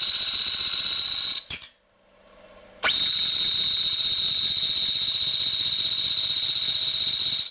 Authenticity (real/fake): real